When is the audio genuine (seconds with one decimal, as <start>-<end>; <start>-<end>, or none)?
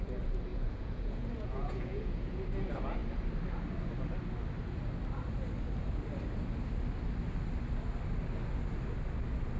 0.0-0.5; 2.4-9.6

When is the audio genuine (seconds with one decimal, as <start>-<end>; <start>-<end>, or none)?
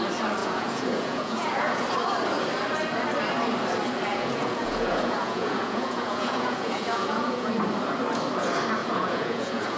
0.0-0.4; 1.8-4.1; 7.5-8.8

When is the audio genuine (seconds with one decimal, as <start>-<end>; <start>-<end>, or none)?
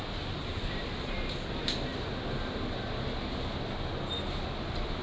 0.0-5.0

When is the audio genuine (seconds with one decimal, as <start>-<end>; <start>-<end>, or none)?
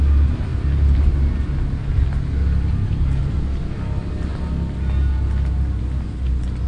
0.0-6.7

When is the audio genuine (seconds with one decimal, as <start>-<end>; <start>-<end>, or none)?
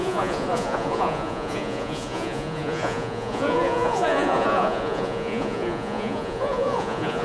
none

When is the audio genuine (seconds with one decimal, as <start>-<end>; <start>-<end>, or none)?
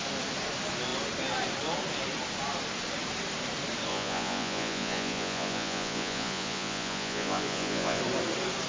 0.0-3.9; 8.0-8.7